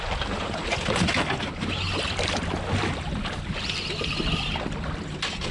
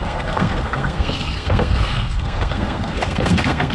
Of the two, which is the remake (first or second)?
second